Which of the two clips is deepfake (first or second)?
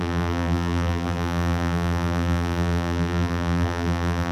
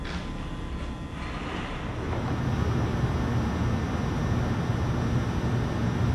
first